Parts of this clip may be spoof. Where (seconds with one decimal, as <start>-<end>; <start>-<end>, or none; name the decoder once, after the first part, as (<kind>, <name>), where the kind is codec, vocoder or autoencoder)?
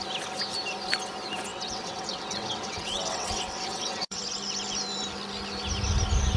1.5-4.2 (vocoder, WaveNeXt)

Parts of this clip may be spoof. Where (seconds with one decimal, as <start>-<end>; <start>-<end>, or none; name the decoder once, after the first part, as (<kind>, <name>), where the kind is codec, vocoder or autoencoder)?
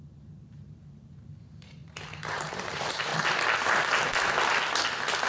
0.0-3.1 (vocoder, BigVGAN v2)